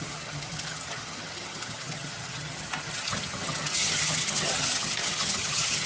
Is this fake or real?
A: fake